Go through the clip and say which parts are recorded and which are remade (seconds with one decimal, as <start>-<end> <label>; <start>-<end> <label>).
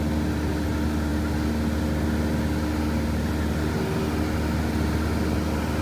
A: 0.0-5.8 recorded